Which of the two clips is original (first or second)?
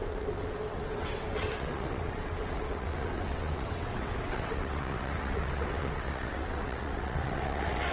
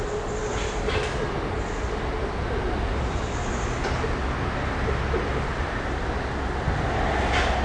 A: second